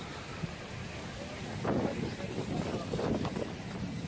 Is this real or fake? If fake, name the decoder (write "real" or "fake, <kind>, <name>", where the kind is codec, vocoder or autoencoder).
real